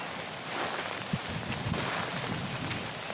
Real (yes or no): yes